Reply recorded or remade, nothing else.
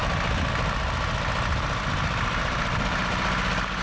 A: recorded